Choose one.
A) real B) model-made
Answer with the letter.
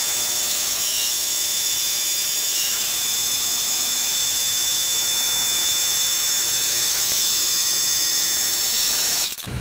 B